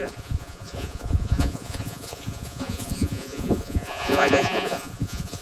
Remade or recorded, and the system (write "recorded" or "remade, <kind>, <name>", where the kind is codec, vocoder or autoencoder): remade, vocoder, Vocos